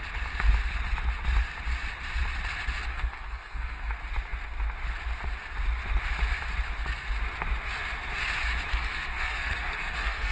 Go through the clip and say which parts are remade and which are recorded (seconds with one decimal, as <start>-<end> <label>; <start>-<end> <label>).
0.0-2.9 recorded; 2.9-3.9 remade; 3.9-8.7 recorded; 8.7-10.3 remade